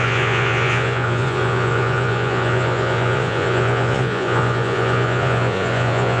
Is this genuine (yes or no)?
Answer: no